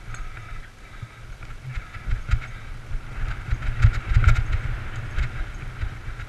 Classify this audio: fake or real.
real